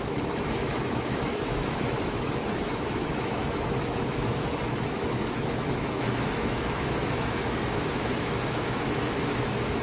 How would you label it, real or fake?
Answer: fake